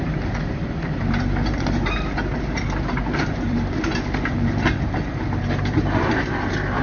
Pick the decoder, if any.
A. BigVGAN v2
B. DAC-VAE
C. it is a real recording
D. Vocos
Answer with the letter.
A